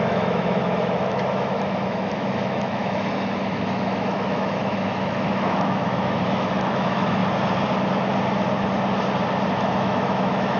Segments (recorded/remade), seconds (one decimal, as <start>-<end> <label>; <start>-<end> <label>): 0.0-7.2 remade; 7.2-9.5 recorded; 9.5-10.6 remade